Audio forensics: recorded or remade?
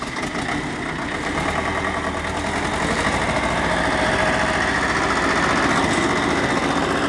recorded